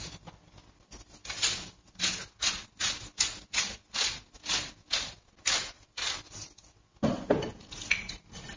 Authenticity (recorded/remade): recorded